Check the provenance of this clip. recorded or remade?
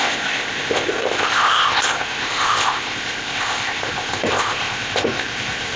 remade